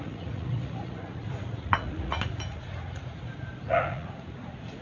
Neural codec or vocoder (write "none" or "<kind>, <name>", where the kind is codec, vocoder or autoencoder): vocoder, Vocos